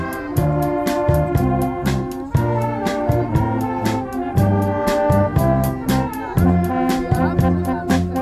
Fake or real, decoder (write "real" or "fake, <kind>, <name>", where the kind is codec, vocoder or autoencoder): real